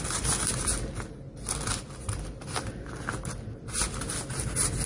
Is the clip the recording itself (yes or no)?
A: yes